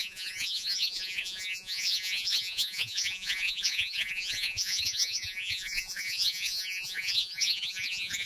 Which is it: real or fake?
fake